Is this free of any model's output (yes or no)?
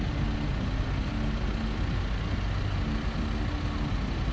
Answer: yes